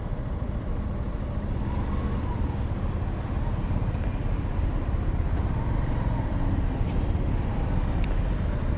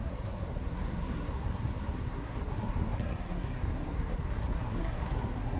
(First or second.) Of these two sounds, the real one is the first